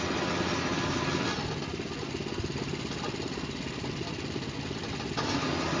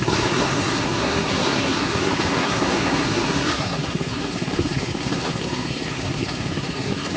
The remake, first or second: second